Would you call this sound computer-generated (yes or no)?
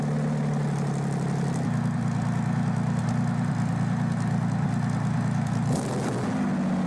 no